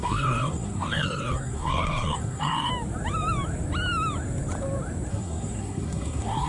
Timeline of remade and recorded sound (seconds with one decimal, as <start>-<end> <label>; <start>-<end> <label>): 0.0-2.7 remade; 2.7-5.1 recorded; 5.1-6.5 remade